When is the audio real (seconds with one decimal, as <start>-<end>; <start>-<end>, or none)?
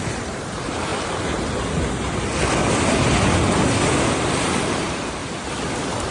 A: 0.9-4.6; 5.2-6.1